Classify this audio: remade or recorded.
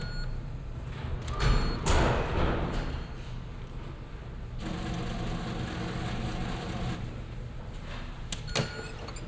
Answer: recorded